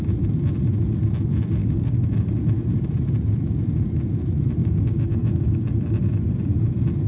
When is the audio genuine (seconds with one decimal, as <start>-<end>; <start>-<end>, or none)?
0.0-1.6; 2.3-4.6; 5.7-7.1